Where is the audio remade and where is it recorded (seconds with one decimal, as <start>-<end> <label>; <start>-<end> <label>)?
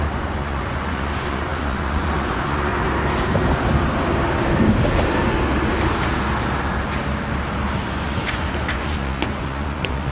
0.0-2.7 remade; 2.7-7.9 recorded; 7.9-10.1 remade